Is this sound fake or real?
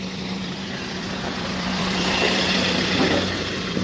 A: fake